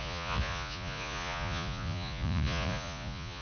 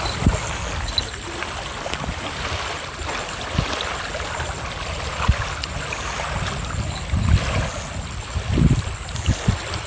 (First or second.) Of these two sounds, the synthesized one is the first